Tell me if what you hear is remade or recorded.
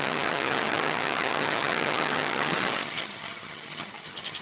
remade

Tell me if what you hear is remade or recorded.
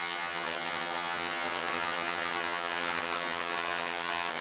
remade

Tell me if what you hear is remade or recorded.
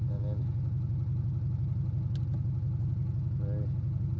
recorded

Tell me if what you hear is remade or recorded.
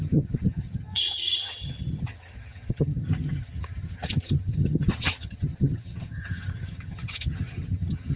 remade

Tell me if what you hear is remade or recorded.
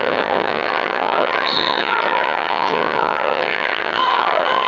remade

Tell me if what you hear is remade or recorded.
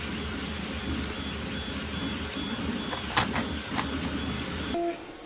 recorded